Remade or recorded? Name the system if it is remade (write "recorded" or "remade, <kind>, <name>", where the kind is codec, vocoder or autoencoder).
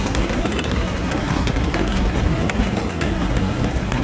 remade, codec, SNAC